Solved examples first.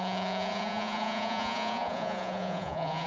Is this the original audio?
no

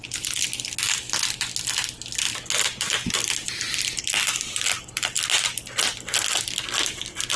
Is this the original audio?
yes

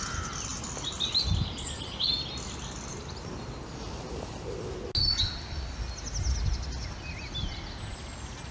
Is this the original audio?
yes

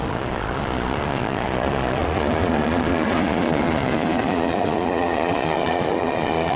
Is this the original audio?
no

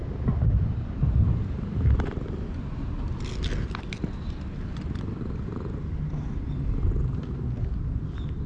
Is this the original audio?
yes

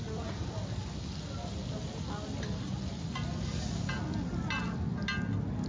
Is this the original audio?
yes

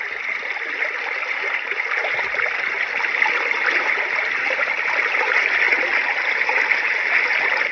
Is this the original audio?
yes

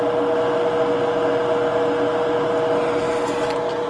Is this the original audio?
yes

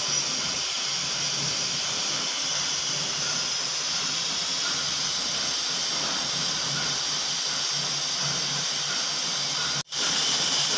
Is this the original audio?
yes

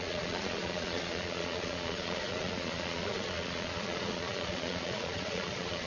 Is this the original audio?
no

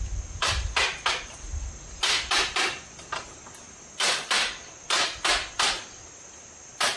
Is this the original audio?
yes